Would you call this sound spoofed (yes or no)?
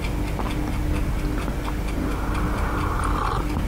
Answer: no